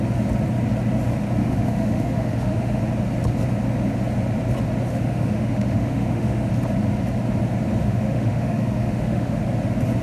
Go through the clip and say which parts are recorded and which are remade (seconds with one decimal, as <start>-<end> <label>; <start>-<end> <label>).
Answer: 0.0-1.4 recorded; 1.4-2.8 remade; 2.8-4.9 recorded; 4.9-6.5 remade; 6.5-7.8 recorded; 7.8-9.4 remade; 9.4-10.0 recorded